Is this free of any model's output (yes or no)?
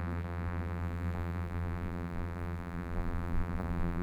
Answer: no